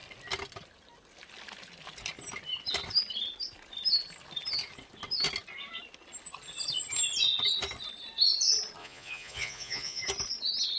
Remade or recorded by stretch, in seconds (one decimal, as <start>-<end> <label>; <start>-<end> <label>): 0.0-8.8 recorded; 8.8-10.0 remade; 10.0-10.8 recorded